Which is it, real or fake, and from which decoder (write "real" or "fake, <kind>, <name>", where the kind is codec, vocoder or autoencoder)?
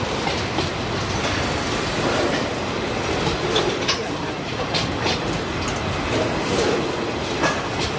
real